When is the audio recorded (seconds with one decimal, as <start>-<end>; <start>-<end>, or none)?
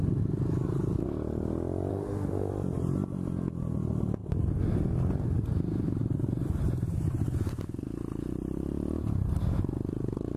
0.0-1.9; 2.5-10.4